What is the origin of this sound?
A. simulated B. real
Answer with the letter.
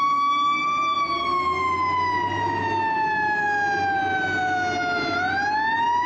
B